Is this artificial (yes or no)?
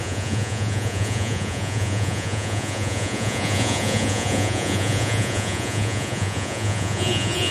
yes